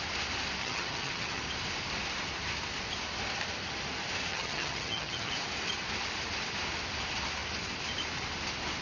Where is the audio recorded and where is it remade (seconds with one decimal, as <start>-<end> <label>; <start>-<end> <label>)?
0.0-0.6 recorded; 0.6-1.4 remade; 1.4-4.3 recorded; 4.3-5.3 remade; 5.3-8.8 recorded